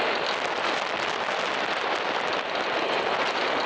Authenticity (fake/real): real